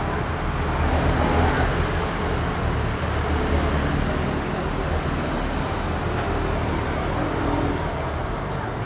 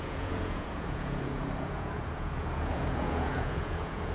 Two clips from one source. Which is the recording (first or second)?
first